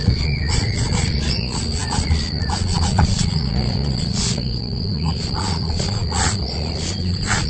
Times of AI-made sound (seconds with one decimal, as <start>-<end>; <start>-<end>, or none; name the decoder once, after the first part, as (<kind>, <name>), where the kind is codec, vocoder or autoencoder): 0.0-7.5 (vocoder, Vocos)